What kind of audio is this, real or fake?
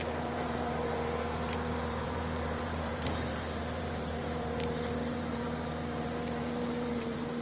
fake